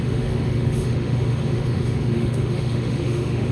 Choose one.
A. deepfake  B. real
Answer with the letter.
A